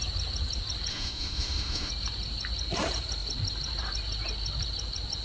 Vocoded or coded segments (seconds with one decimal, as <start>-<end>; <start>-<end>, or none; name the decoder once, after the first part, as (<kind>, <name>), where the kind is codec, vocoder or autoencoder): 0.9-1.9 (autoencoder, DAC-VAE)